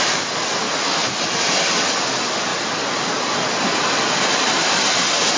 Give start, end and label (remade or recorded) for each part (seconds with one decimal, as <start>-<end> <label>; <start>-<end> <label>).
0.0-1.0 remade; 1.0-2.0 recorded; 2.0-5.4 remade